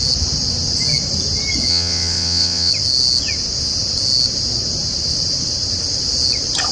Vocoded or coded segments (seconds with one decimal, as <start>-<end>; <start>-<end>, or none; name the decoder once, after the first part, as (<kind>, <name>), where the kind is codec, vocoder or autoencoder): 1.7-2.7 (vocoder, WaveNeXt)